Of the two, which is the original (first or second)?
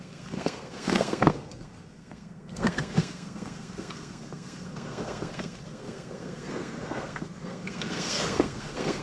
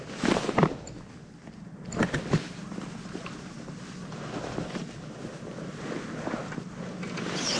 second